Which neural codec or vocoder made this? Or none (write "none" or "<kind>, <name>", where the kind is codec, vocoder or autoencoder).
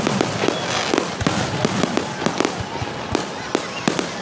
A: none